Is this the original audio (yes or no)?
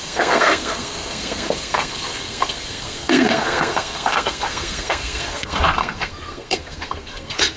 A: no